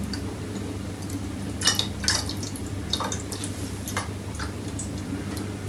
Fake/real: real